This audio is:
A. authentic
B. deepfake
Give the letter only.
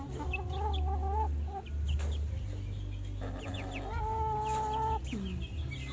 A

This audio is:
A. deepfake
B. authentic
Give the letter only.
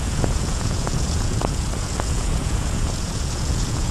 A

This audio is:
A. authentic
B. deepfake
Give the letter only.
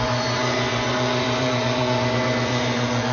B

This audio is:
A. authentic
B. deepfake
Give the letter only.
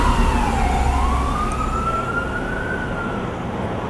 A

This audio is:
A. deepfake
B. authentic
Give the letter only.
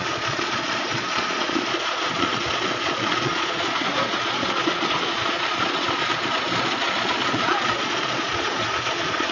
A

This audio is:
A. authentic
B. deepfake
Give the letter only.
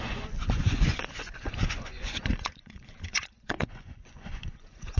B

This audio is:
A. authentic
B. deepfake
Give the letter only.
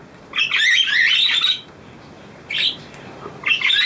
A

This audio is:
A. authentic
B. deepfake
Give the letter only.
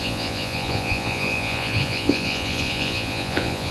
B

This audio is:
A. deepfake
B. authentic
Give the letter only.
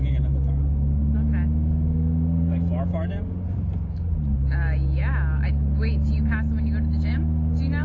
B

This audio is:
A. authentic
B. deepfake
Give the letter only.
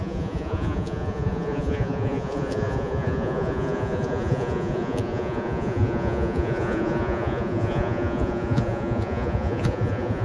B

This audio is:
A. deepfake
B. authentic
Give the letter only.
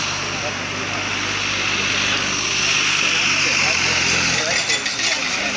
B